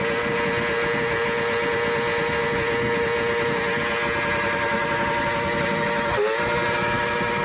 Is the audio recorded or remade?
recorded